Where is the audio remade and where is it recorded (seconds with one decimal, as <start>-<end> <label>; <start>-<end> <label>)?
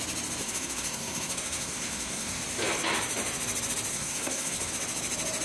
0.0-0.4 recorded; 0.4-2.4 remade; 2.4-3.9 recorded; 3.9-4.7 remade; 4.7-5.4 recorded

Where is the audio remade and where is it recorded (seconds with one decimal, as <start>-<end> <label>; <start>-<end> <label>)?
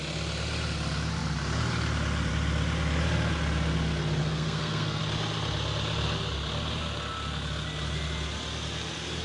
0.0-4.2 recorded; 4.2-5.0 remade; 5.0-9.2 recorded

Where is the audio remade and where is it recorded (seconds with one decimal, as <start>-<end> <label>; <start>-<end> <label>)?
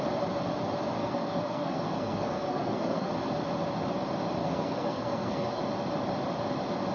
0.0-1.0 recorded; 1.0-3.1 remade; 3.1-4.4 recorded; 4.4-5.6 remade; 5.6-6.9 recorded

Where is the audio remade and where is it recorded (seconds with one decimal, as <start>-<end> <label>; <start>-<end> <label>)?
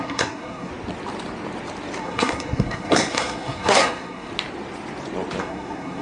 0.0-0.7 remade; 0.7-2.0 recorded; 2.0-4.3 remade; 4.3-5.4 recorded; 5.4-6.0 remade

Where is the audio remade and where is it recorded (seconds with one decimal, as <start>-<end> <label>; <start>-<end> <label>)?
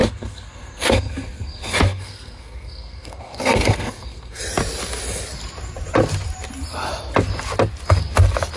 0.0-4.4 remade; 4.4-8.6 recorded